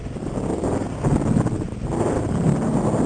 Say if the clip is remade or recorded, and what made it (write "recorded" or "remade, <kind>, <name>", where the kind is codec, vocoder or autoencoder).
recorded